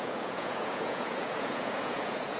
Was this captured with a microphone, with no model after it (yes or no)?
no